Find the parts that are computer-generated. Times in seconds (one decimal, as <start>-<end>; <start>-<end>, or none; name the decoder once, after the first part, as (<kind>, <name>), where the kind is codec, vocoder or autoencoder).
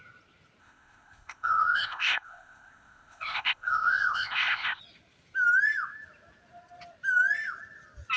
0.6-4.8 (codec, ZipCodec)